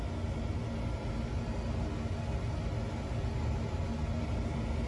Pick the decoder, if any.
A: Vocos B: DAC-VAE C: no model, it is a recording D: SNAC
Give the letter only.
C